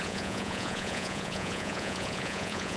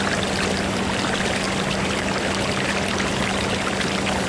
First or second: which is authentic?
second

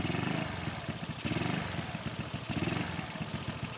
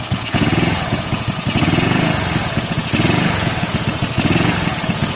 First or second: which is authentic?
first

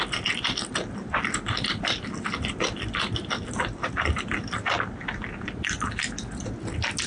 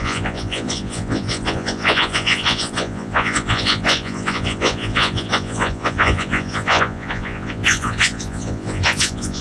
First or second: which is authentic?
first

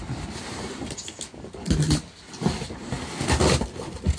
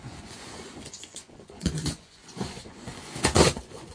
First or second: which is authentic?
first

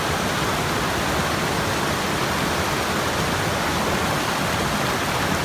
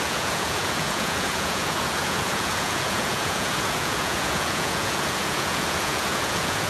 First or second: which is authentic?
first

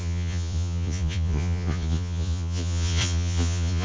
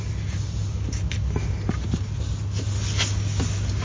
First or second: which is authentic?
second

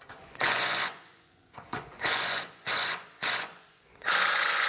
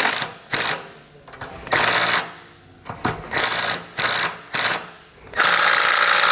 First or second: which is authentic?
second